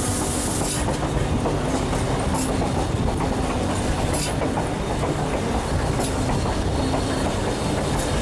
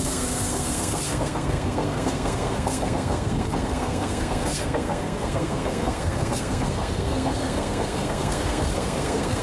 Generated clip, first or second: second